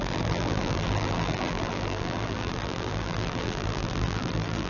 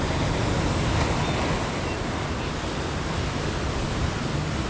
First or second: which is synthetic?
first